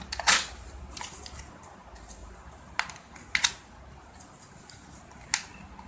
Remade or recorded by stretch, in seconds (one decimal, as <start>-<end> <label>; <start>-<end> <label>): 0.0-5.9 recorded